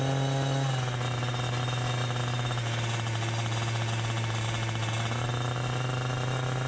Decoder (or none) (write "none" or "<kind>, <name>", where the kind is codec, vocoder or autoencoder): none